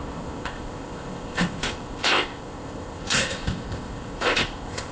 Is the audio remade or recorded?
remade